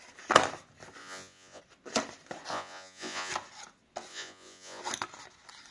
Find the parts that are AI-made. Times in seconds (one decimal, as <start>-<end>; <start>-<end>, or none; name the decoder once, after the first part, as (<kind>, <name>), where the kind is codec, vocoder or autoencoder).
1.0-1.6 (vocoder, Vocos); 2.5-3.3; 4.1-4.8